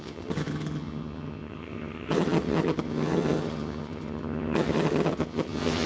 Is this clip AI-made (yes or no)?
yes